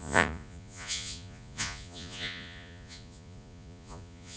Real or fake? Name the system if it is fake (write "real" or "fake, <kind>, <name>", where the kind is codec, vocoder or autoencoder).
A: fake, vocoder, Vocos